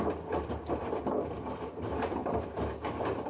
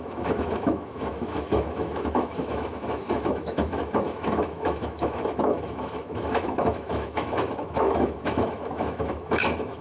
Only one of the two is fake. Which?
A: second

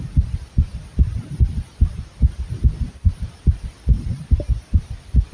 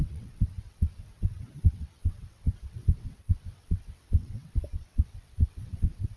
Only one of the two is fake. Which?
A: second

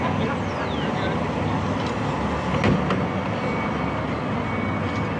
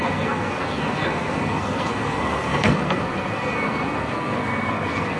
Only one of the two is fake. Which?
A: second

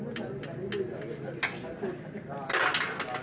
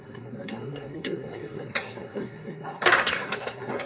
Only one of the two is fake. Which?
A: second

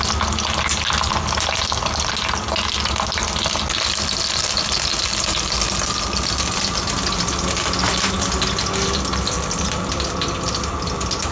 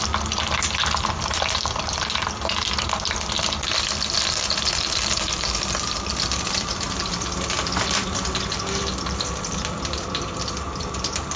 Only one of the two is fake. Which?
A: second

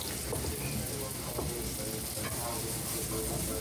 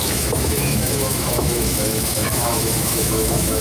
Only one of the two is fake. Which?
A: second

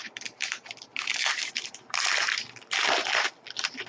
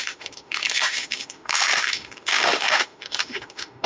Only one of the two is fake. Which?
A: second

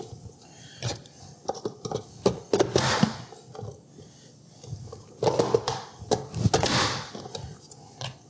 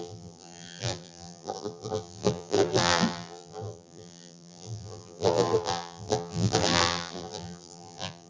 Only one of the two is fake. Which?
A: second